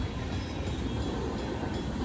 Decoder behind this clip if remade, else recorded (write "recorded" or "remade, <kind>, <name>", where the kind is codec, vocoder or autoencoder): recorded